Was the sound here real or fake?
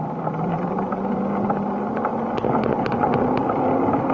real